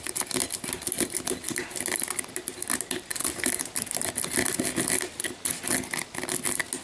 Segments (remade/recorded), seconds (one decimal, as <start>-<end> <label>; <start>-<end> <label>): 0.0-6.8 recorded